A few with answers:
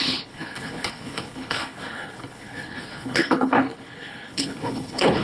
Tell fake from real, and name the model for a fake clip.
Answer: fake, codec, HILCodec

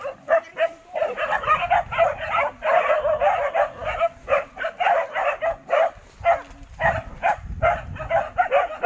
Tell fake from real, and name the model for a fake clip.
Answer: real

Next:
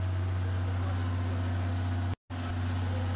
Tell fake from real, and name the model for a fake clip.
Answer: real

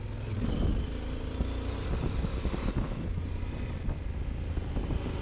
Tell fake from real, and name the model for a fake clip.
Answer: real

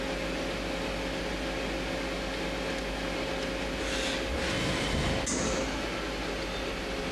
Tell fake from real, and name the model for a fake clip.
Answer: real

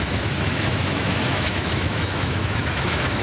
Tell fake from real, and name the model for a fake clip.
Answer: fake, autoencoder, DAC-VAE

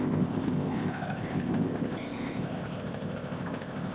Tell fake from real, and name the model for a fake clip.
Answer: fake, codec, ZipCodec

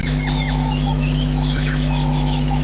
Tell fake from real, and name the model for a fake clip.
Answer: fake, autoencoder, DAC-VAE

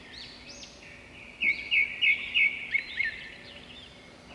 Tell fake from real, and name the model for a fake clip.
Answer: real